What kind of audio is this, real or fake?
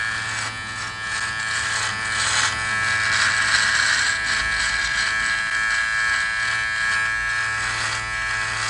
real